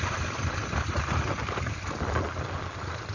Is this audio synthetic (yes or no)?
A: no